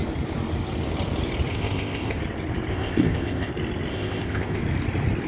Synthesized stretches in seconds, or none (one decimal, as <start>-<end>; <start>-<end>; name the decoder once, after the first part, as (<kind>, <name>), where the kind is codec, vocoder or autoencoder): 1.5-2.2 (codec, ZipCodec); 2.7-3.5; 3.9-4.6